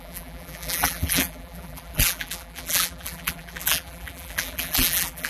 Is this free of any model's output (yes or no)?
no